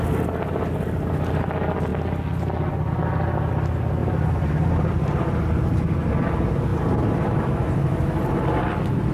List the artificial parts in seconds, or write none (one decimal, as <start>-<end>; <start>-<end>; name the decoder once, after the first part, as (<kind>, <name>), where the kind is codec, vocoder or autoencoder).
4.0-6.1 (vocoder, BigVGAN v2); 6.7-8.4